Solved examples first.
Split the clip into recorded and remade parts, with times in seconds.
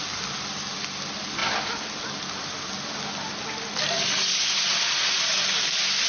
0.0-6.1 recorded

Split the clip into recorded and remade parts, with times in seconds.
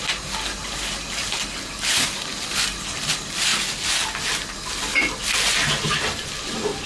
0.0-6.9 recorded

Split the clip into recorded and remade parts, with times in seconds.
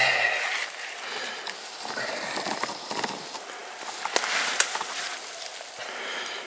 0.0-6.5 recorded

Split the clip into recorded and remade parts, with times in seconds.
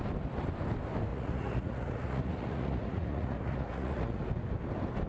0.0-1.1 recorded; 1.1-4.2 remade; 4.2-5.1 recorded